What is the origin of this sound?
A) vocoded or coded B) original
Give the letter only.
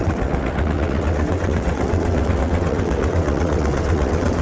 A